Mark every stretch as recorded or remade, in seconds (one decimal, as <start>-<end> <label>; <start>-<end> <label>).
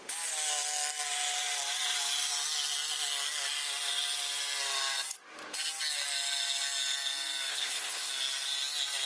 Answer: 0.0-7.5 recorded; 7.5-8.1 remade; 8.1-9.1 recorded